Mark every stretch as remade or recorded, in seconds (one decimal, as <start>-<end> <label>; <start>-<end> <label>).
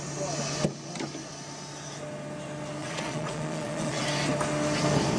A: 0.0-2.8 recorded; 2.8-4.0 remade; 4.0-5.2 recorded